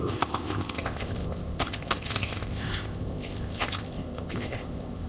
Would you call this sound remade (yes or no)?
yes